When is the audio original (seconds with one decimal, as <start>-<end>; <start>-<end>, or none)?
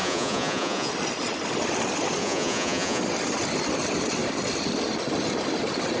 0.9-2.2; 3.0-6.0